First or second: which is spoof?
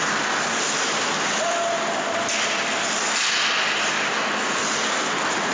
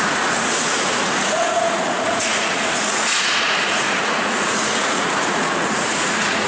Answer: second